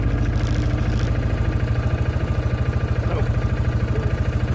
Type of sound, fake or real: real